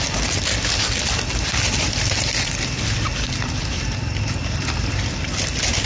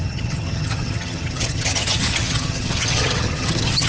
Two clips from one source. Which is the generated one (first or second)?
second